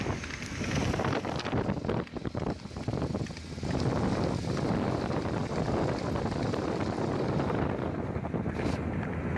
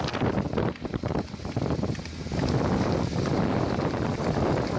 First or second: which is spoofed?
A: second